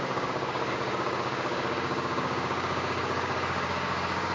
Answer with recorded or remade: remade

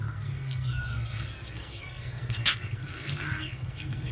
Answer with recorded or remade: remade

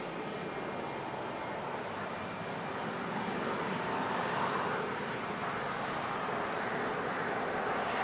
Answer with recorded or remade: recorded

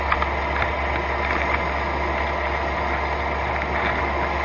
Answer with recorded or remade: recorded